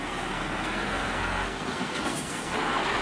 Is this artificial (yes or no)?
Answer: yes